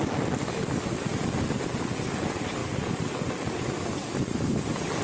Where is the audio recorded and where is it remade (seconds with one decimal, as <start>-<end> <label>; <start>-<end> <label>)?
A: 0.0-5.0 recorded

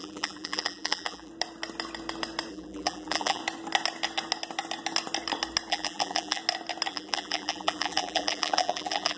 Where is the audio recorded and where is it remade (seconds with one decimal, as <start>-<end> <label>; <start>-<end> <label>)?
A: 0.0-1.3 remade; 1.3-2.5 recorded; 2.5-3.4 remade; 3.4-5.7 recorded; 5.7-6.4 remade; 6.4-6.9 recorded; 6.9-9.2 remade

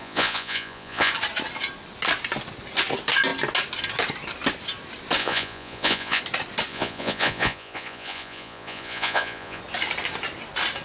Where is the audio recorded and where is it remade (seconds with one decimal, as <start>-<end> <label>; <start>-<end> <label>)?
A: 0.0-1.1 remade; 1.1-5.2 recorded; 5.2-6.2 remade; 6.2-6.7 recorded; 6.7-9.6 remade; 9.6-10.8 recorded

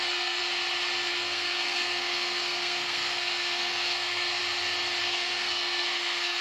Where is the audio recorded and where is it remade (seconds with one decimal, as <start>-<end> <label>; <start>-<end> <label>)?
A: 0.0-0.4 remade; 0.4-1.1 recorded; 1.1-4.4 remade; 4.4-5.0 recorded; 5.0-6.4 remade

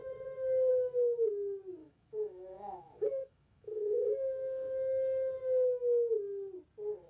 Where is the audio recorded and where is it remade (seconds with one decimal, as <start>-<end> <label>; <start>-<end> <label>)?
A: 0.0-0.7 remade; 0.7-1.8 recorded; 1.8-6.1 remade; 6.1-7.1 recorded

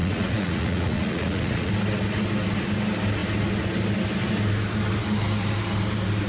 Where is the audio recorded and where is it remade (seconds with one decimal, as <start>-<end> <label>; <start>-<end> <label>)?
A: 0.0-1.7 remade; 1.7-6.3 recorded

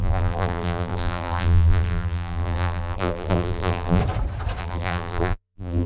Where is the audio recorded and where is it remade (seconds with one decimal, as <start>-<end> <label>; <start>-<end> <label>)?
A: 0.0-4.0 remade; 4.0-4.6 recorded; 4.6-5.9 remade